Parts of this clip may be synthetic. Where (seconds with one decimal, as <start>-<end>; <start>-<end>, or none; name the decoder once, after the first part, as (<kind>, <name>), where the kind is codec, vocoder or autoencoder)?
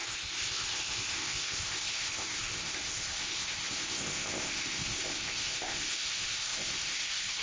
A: 0.0-7.4 (codec, ZipCodec)